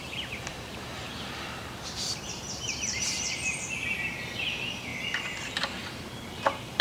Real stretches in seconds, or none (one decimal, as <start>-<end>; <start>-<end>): 4.9-5.9